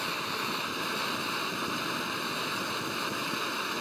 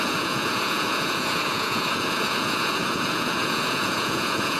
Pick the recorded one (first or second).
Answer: first